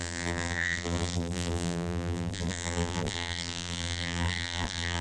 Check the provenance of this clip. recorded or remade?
remade